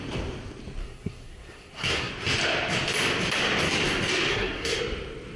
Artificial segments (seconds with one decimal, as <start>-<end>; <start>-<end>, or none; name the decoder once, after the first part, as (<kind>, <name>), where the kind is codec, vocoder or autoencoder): 0.8-2.1 (codec, SNAC); 4.3-4.8

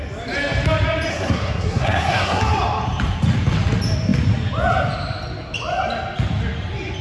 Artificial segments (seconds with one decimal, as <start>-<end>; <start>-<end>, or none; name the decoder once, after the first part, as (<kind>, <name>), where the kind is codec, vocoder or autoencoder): 1.1-2.4 (codec, SNAC)

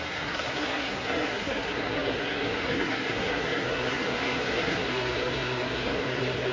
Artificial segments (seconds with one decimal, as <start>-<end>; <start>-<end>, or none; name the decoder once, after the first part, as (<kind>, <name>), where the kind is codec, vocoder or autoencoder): 0.0-6.5 (codec, SNAC)

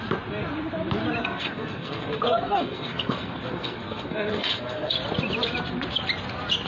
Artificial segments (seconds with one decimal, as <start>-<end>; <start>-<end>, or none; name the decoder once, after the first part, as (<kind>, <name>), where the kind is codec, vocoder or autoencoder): 1.2-4.9 (codec, SNAC)